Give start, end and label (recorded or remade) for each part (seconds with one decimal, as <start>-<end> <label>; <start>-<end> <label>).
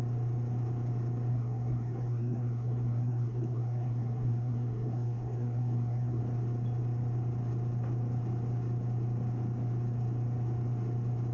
0.0-1.3 recorded; 1.3-6.2 remade; 6.2-11.3 recorded